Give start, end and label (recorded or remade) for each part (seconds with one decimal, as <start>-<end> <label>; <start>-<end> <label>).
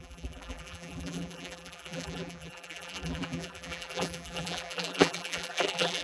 0.0-6.0 remade